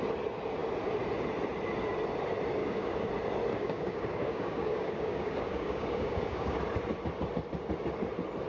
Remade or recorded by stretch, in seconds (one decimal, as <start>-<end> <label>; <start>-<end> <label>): 0.0-2.6 recorded; 2.6-3.1 remade; 3.1-3.5 recorded; 3.5-6.6 remade; 6.6-8.5 recorded